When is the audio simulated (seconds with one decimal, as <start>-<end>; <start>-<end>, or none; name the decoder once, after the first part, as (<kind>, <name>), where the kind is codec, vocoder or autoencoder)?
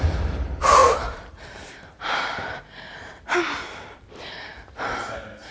0.8-3.1 (vocoder, BigVGAN v2)